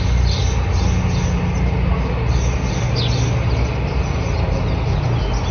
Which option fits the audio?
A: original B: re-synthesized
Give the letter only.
A